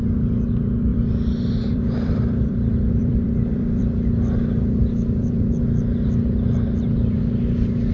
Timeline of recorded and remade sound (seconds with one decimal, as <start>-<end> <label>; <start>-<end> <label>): 0.0-0.9 recorded; 0.9-5.6 remade; 5.6-7.9 recorded